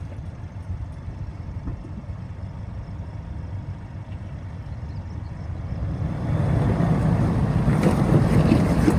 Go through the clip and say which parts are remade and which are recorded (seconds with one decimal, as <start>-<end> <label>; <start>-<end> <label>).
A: 0.0-1.7 remade; 1.7-6.4 recorded; 6.4-9.0 remade